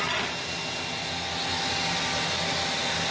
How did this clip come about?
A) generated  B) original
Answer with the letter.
B